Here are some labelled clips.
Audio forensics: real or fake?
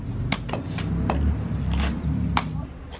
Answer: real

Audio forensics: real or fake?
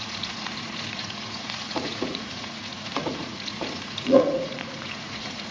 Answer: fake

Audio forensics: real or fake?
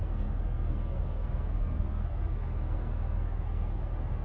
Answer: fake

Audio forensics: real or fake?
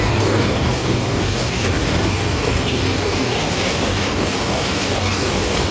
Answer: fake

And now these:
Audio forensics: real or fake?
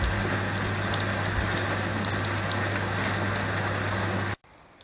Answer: real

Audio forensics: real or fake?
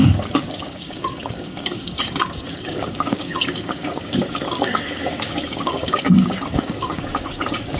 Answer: fake